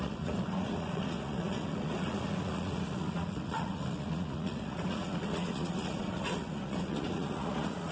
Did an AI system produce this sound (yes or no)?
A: yes